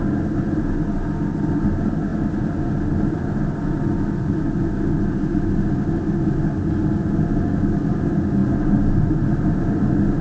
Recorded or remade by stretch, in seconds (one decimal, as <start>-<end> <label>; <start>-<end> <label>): 0.0-10.2 recorded